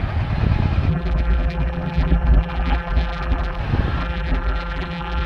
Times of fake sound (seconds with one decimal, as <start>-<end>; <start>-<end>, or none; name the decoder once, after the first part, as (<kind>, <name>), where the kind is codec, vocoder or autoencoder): 0.9-3.6 (vocoder, BigVGAN v2); 4.0-5.3